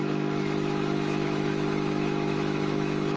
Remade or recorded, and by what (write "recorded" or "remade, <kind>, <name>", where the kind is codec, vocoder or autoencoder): remade, autoencoder, DAC-VAE